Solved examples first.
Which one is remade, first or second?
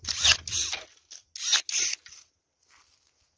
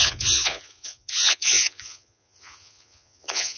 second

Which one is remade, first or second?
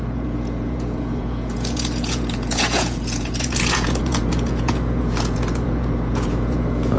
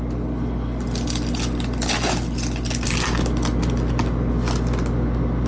first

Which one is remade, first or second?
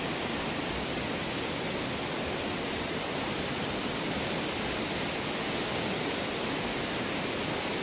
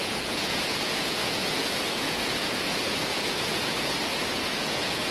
second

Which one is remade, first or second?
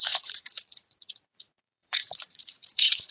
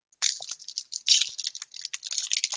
first